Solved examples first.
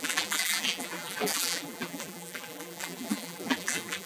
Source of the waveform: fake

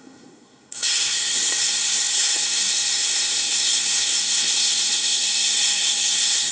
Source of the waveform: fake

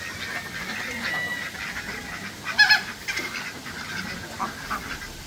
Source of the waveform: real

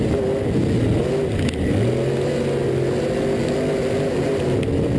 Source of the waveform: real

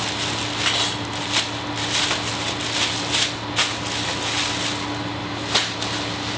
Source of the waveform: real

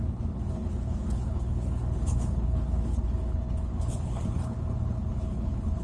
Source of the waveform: fake